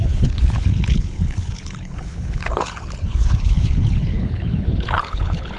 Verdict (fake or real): fake